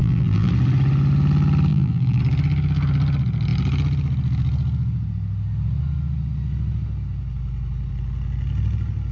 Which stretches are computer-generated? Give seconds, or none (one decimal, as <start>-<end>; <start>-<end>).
0.0-0.5; 1.7-2.2